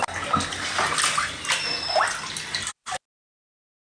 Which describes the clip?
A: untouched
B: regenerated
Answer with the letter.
A